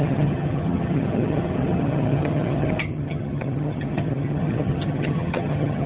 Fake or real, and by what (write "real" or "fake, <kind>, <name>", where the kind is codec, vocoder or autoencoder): fake, vocoder, HiFi-GAN